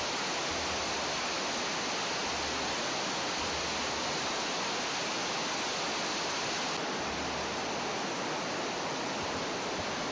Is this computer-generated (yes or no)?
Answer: no